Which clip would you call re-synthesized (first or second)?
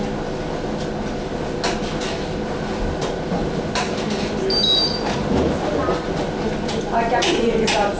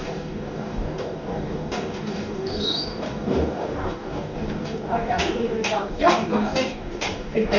second